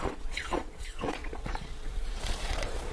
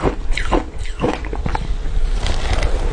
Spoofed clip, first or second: first